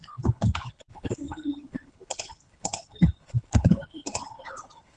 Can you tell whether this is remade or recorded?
remade